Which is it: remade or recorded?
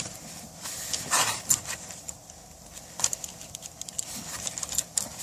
remade